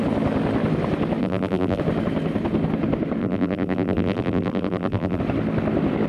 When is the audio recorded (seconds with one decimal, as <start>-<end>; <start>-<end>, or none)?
0.0-1.2; 1.8-3.2; 5.2-6.1

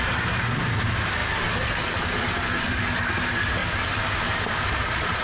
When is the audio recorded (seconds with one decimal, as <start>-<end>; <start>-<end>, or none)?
1.2-2.6; 3.6-4.5

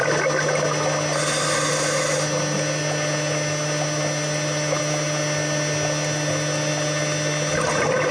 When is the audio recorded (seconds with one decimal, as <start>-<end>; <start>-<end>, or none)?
0.0-8.1

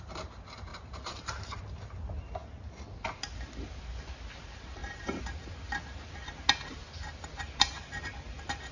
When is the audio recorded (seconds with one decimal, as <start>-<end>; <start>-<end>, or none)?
0.0-0.7; 1.6-4.8; 6.0-6.7; 7.7-8.7

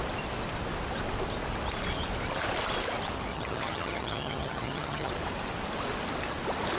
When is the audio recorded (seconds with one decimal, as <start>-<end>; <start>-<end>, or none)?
0.0-3.3; 5.1-6.8

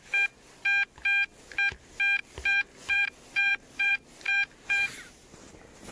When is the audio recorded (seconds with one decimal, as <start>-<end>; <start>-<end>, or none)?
0.0-2.5; 5.1-5.9

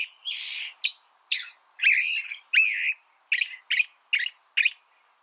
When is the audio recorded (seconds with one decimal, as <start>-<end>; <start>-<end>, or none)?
0.0-5.2

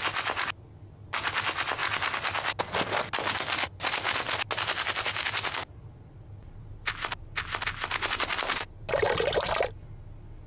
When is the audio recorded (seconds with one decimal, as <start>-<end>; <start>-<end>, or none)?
0.0-10.5